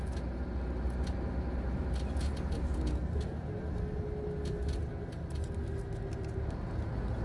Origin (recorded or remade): recorded